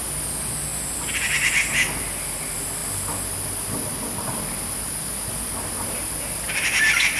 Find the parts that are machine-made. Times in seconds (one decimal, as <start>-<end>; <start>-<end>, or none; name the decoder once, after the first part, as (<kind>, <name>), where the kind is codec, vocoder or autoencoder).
none